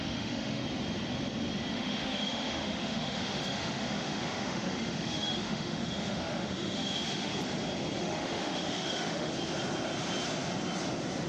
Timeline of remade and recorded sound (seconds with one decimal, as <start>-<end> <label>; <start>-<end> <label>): 0.0-0.6 remade; 0.6-1.7 recorded; 1.7-7.3 remade; 7.3-8.0 recorded; 8.0-9.3 remade; 9.3-11.3 recorded